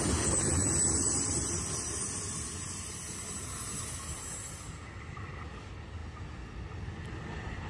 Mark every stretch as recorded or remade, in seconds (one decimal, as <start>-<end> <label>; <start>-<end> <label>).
0.0-7.7 recorded